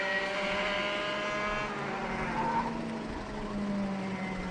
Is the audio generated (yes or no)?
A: no